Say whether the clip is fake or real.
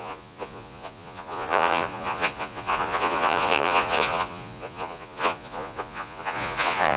fake